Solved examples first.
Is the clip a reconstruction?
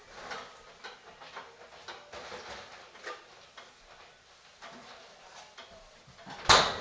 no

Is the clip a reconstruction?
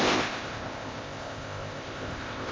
yes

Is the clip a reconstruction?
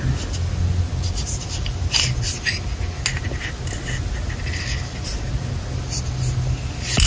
no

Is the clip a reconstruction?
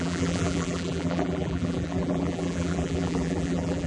yes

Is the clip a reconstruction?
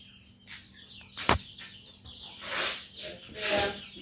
no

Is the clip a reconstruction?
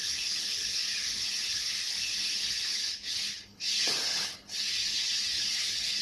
yes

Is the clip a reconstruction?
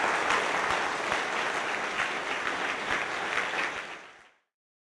no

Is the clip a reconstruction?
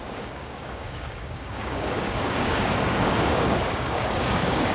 yes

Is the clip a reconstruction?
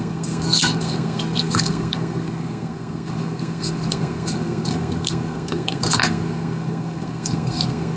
yes